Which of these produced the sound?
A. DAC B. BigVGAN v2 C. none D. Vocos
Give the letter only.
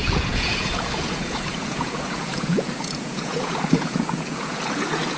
D